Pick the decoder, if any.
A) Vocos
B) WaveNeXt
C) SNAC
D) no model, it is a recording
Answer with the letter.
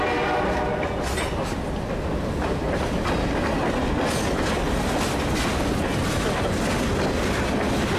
D